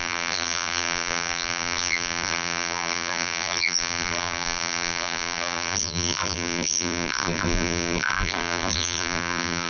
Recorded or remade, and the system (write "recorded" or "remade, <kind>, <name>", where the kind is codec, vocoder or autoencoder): remade, vocoder, BigVGAN v2